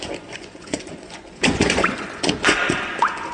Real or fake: fake